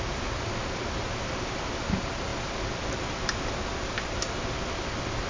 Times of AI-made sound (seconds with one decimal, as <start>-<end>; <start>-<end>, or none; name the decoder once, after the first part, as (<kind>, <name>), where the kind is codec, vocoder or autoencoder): none